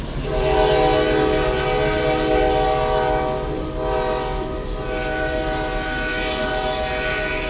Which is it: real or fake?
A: real